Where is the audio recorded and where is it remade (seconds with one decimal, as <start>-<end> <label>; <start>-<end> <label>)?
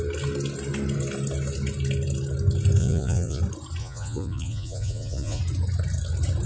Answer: 0.0-2.8 recorded; 2.8-3.4 remade; 3.4-3.8 recorded; 3.8-5.4 remade; 5.4-6.5 recorded